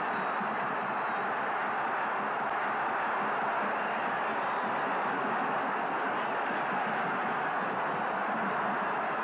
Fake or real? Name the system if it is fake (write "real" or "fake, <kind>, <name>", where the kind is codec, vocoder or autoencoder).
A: real